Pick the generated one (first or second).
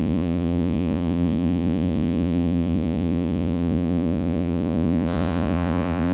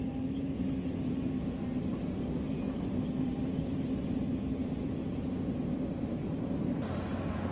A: first